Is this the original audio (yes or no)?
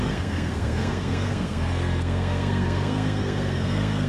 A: no